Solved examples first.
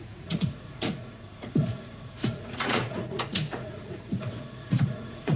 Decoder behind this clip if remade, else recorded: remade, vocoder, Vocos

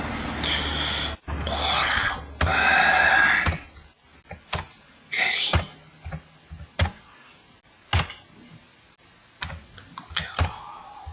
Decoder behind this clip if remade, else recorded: recorded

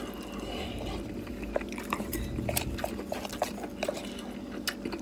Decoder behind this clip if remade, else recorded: recorded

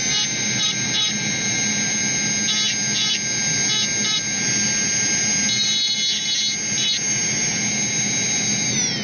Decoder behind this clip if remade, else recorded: recorded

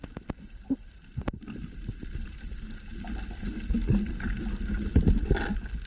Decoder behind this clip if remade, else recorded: recorded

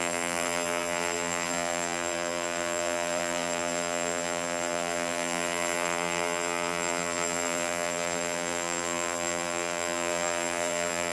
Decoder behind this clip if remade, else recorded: remade, vocoder, BigVGAN v2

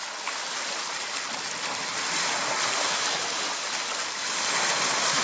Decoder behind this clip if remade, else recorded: recorded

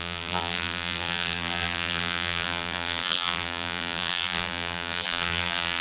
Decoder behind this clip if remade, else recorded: remade, vocoder, BigVGAN v2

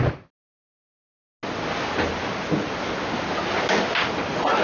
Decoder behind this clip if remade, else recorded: recorded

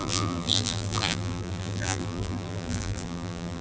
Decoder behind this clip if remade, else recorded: remade, vocoder, BigVGAN v2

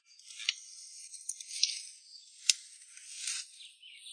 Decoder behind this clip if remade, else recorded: recorded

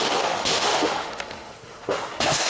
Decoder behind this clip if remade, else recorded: remade, autoencoder, DAC-VAE